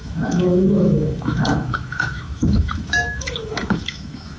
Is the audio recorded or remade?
remade